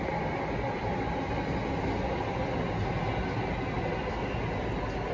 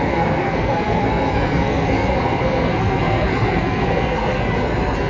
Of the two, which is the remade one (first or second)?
second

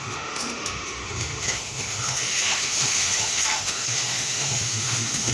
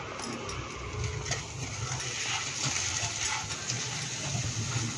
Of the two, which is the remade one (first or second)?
first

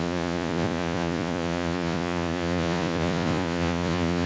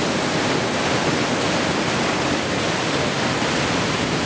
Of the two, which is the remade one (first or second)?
first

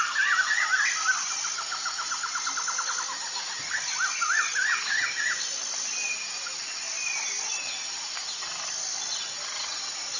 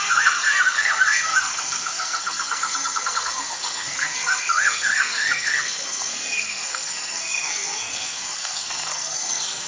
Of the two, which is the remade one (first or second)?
second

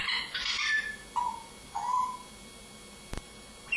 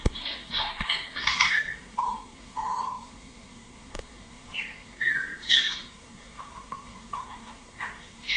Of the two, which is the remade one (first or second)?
second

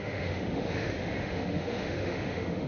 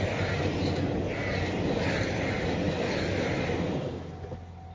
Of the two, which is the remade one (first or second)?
first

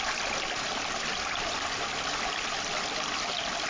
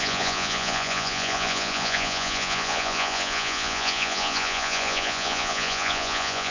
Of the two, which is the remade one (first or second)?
second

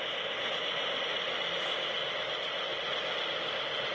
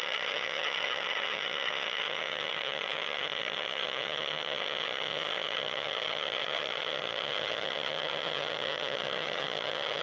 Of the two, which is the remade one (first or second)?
second